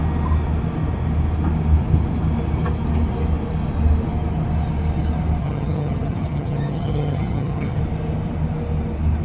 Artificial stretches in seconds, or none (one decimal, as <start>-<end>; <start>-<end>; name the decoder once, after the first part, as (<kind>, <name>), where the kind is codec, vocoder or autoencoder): 5.4-7.8 (vocoder, HiFi-GAN)